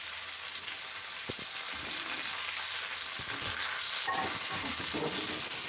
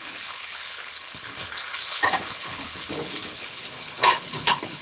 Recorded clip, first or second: first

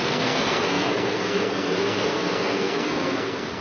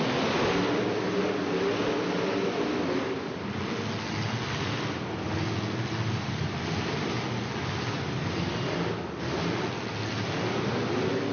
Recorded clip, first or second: second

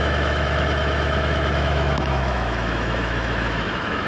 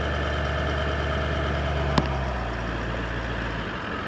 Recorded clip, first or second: second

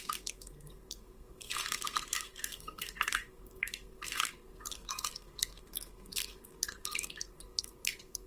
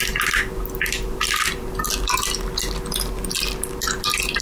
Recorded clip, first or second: second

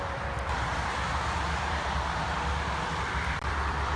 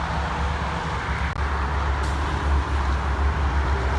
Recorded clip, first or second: second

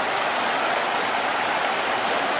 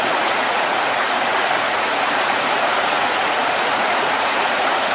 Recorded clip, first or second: first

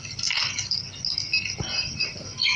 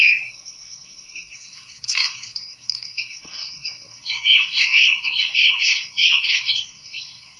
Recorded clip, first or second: first